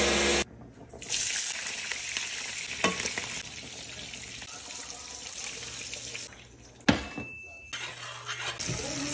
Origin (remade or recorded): recorded